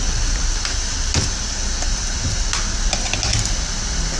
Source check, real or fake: real